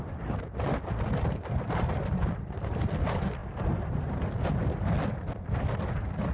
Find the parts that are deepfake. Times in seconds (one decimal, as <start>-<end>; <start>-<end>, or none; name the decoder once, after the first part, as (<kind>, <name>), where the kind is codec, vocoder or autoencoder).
2.2-2.8 (vocoder, BigVGAN v2); 3.4-4.1

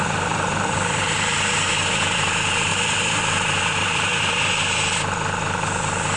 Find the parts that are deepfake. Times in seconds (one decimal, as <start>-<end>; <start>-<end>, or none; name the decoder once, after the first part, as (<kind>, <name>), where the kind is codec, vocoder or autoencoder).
0.0-1.7 (vocoder, BigVGAN v2); 2.7-3.2; 3.8-4.5